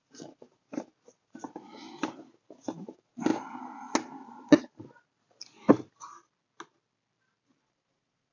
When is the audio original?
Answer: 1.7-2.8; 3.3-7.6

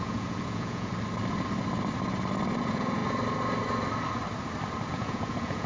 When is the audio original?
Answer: 0.9-2.6; 3.0-4.9

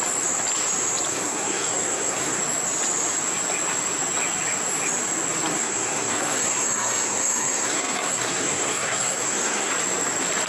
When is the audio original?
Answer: 0.0-1.1; 2.4-5.5; 9.7-10.5

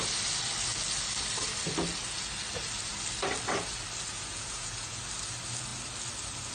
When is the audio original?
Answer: 0.0-4.1; 5.0-6.5

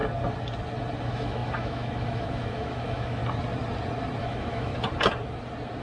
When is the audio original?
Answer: 0.0-1.0; 3.2-4.2; 4.7-5.8

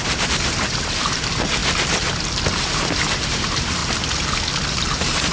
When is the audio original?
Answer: 1.6-2.5; 3.8-4.7